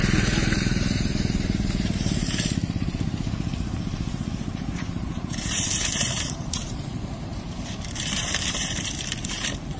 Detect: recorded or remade remade